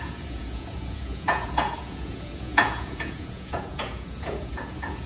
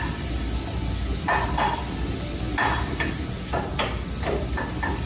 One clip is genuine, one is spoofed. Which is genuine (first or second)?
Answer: second